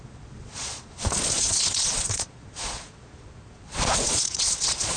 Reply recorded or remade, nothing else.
remade